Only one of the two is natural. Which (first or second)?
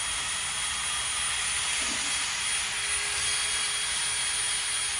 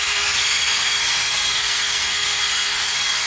first